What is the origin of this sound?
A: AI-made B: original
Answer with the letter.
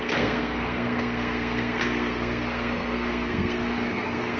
A